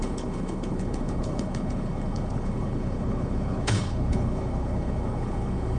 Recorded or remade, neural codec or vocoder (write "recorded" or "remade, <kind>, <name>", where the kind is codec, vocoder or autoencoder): remade, codec, HILCodec